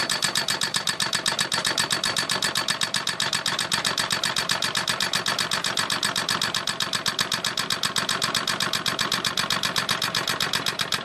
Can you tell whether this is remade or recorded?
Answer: remade